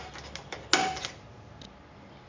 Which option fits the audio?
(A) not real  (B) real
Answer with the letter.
B